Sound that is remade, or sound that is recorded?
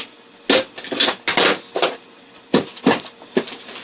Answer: recorded